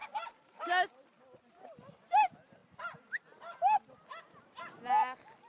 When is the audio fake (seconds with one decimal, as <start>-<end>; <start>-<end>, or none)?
0.0-0.6